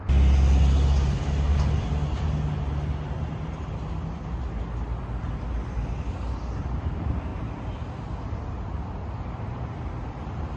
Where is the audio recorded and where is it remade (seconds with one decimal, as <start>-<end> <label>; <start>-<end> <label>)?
0.0-10.6 recorded